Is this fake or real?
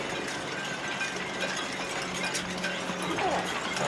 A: real